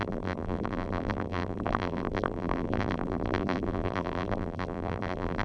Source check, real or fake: fake